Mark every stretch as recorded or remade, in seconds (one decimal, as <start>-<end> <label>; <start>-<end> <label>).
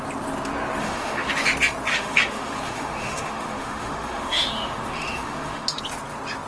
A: 0.0-0.8 recorded; 0.8-1.3 remade; 1.3-1.9 recorded; 1.9-5.8 remade; 5.8-6.5 recorded